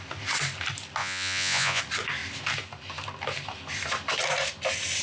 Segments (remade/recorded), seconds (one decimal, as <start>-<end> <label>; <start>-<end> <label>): 0.0-1.0 recorded; 1.0-1.8 remade; 1.8-5.0 recorded